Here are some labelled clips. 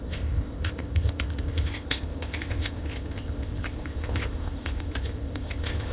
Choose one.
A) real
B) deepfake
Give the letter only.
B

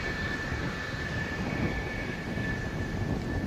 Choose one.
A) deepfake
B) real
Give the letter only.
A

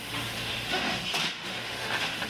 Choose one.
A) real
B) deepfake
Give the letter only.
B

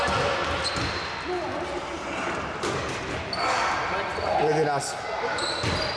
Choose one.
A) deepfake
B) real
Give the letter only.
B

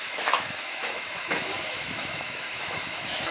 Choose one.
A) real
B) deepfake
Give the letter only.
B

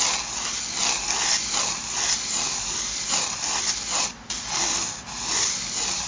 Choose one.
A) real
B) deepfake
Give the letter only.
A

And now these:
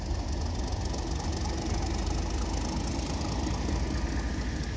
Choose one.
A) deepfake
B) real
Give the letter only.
B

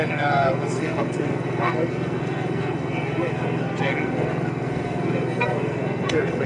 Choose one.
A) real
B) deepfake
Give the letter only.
B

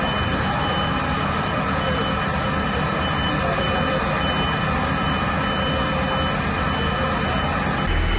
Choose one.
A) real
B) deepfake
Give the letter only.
A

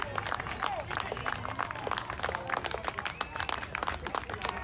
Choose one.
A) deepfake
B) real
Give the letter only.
B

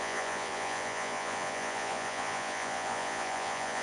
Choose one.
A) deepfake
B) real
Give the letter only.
A